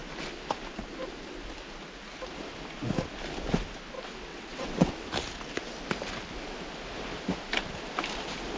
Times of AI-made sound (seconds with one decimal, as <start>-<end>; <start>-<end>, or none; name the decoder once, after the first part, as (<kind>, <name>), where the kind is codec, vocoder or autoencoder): 4.3-4.9 (vocoder, WaveNeXt)